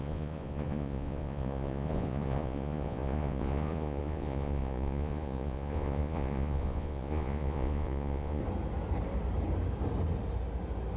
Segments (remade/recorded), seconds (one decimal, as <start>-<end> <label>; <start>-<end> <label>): 0.0-8.4 remade; 8.4-11.0 recorded